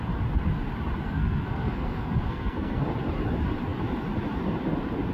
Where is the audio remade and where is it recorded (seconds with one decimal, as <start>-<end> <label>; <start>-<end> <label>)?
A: 0.0-1.0 recorded; 1.0-2.8 remade; 2.8-5.1 recorded